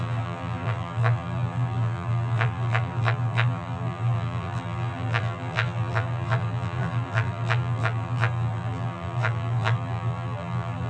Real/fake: fake